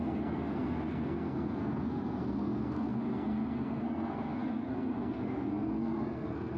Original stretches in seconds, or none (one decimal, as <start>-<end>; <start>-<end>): none